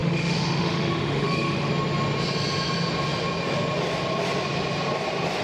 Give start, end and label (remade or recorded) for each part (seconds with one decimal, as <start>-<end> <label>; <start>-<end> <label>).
0.0-1.7 remade; 1.7-5.4 recorded